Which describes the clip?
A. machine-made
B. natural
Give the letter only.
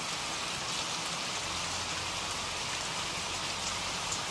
B